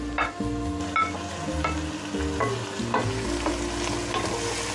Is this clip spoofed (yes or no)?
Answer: no